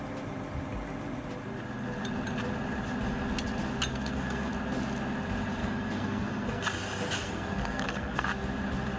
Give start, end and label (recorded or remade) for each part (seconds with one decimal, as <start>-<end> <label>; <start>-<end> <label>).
0.0-3.9 recorded; 3.9-4.5 remade; 4.5-5.6 recorded; 5.6-6.6 remade; 6.6-7.2 recorded; 7.2-8.3 remade; 8.3-9.0 recorded